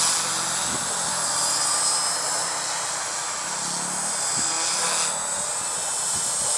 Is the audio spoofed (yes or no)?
no